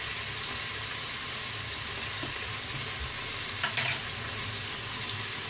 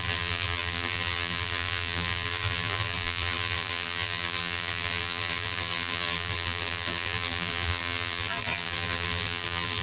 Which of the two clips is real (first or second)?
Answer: first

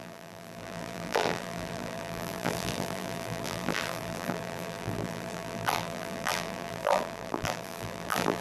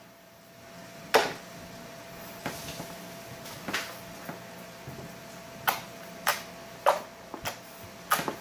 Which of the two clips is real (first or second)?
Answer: second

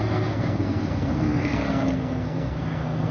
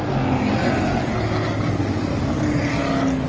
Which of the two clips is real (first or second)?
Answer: second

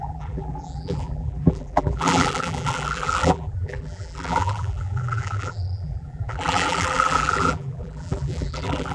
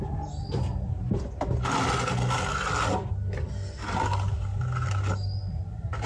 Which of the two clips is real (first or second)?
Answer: second